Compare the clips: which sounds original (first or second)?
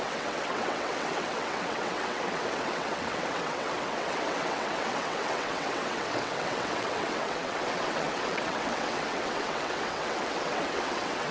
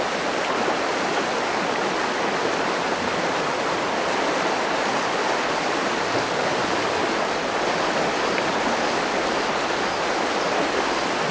second